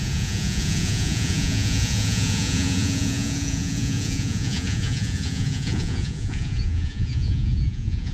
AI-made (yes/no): yes